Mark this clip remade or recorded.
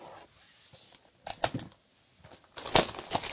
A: recorded